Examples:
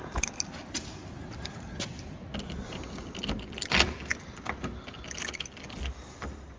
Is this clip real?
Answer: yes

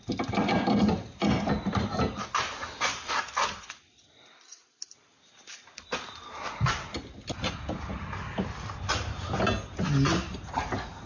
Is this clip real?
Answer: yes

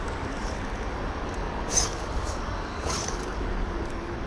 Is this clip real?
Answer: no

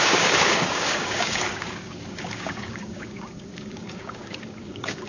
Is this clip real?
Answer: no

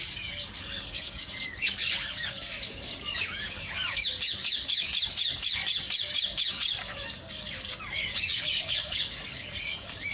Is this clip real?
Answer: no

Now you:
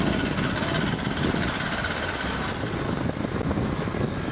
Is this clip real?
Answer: yes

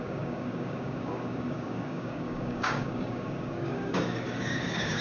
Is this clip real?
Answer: no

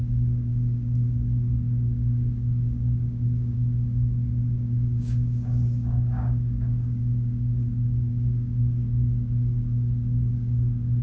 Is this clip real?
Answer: no